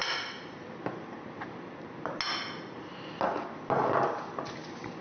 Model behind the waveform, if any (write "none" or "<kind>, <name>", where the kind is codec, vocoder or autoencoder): none